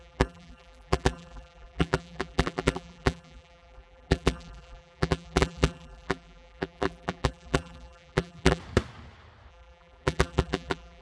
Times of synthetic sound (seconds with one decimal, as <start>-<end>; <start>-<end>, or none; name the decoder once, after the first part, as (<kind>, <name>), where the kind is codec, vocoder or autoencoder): 0.0-8.6 (vocoder, BigVGAN v2); 9.5-11.0